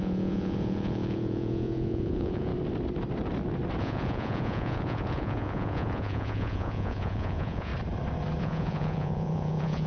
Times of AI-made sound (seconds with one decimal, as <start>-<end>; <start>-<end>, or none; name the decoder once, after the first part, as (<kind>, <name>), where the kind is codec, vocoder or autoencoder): 0.0-2.5 (vocoder, Vocos); 3.8-7.7; 8.4-9.9